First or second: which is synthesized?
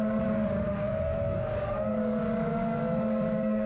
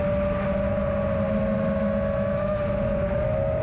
first